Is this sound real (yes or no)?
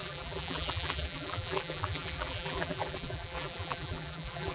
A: no